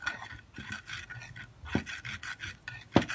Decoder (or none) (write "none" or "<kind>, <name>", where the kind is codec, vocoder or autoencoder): none